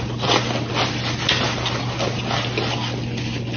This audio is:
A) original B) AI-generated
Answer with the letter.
A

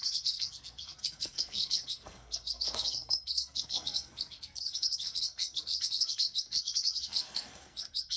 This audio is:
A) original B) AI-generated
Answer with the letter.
B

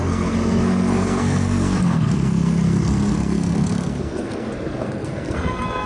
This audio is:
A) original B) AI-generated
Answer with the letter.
B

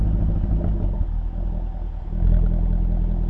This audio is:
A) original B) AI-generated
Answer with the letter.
A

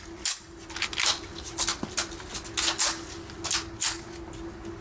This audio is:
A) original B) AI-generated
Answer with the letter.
A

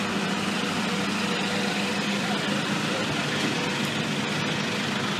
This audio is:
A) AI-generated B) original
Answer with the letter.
B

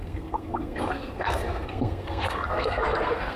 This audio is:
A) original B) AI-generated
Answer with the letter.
B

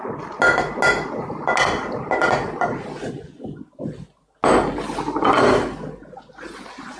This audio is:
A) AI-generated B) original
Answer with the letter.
B